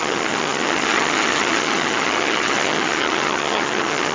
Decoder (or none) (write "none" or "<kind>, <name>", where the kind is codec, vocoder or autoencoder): vocoder, HiFi-GAN